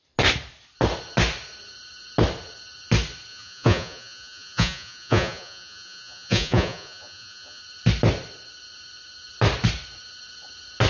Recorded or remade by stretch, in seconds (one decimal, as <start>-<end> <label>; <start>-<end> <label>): 0.0-3.3 recorded; 3.3-7.6 remade; 7.6-10.9 recorded

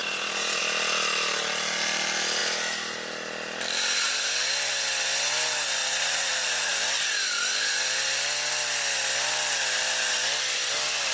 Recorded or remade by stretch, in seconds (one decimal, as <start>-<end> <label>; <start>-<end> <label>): 0.0-0.6 remade; 0.6-5.8 recorded; 5.8-6.7 remade; 6.7-11.1 recorded